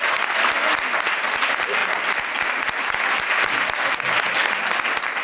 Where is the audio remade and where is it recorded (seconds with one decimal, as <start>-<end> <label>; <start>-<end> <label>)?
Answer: 0.0-5.2 recorded